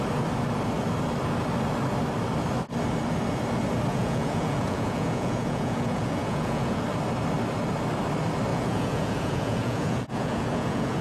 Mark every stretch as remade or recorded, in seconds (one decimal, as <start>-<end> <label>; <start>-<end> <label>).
0.0-3.9 recorded; 3.9-6.8 remade; 6.8-8.5 recorded; 8.5-11.0 remade